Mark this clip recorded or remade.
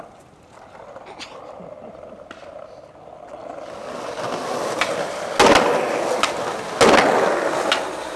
recorded